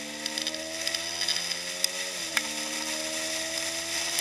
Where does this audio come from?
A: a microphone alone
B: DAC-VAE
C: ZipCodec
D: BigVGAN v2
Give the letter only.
A